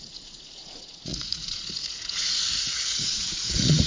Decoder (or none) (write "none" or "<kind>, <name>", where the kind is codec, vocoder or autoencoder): vocoder, Vocos